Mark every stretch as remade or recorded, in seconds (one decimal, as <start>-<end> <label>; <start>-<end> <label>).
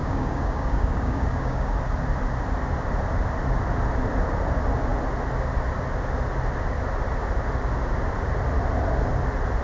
0.0-1.7 remade; 1.7-9.6 recorded